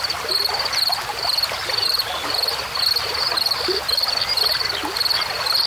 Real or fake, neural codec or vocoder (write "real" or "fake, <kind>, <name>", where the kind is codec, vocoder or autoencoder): fake, vocoder, BigVGAN v2